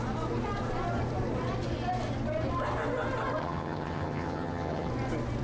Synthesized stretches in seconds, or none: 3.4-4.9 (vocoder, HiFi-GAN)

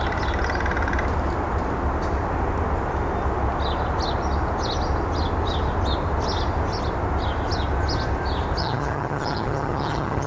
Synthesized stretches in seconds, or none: 8.6-10.3 (vocoder, HiFi-GAN)

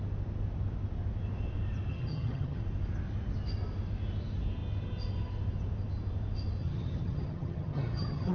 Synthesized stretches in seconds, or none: 1.9-2.6 (vocoder, HiFi-GAN); 6.6-8.3

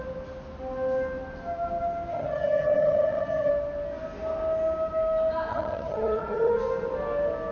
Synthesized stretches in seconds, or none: 2.1-3.5 (vocoder, HiFi-GAN); 5.5-6.5

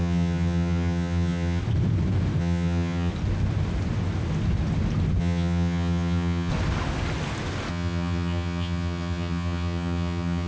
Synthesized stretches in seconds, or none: 0.0-1.6 (vocoder, HiFi-GAN); 2.4-3.1; 5.2-6.5; 7.7-10.5

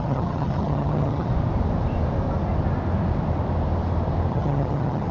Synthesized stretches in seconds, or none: 0.0-1.3 (vocoder, HiFi-GAN); 4.3-5.1